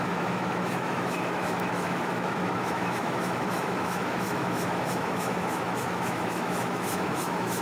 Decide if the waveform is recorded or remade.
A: remade